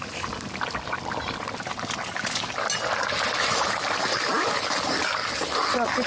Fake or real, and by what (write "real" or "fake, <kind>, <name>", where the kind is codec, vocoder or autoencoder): real